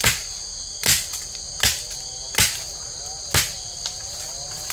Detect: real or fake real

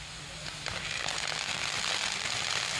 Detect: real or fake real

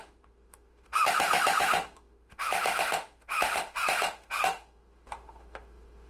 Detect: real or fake fake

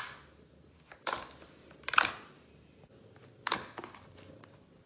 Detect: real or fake real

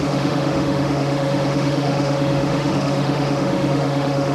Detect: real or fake fake